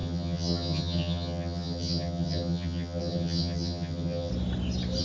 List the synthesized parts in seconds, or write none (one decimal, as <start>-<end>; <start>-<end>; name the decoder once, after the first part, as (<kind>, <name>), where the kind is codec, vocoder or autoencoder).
0.0-4.3 (vocoder, HiFi-GAN)